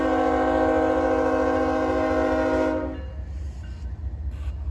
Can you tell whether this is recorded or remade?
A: recorded